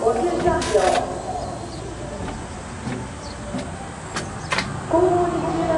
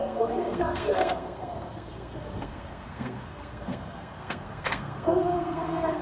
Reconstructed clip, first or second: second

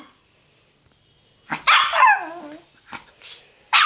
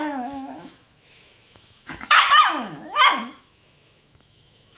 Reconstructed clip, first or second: second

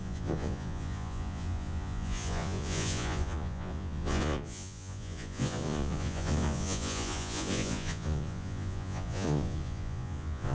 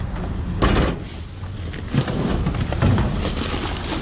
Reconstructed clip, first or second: first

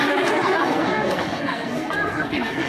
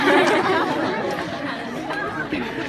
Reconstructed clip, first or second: first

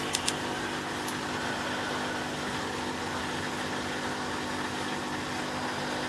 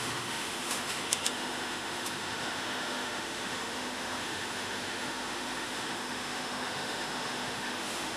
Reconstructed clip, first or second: second